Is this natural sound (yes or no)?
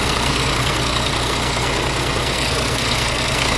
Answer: no